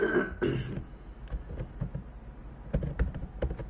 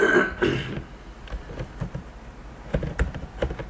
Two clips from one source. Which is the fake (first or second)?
second